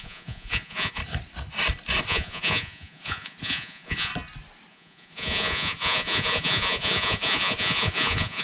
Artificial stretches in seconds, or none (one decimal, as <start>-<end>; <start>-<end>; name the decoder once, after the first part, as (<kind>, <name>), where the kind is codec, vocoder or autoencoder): 0.0-1.0 (vocoder, Vocos); 2.0-4.1; 4.7-8.4